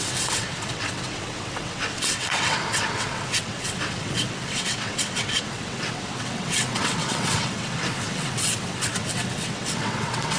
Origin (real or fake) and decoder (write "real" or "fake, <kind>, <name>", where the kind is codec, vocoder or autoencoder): fake, vocoder, WaveNeXt